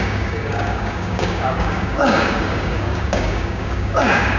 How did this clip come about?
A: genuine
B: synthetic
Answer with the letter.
B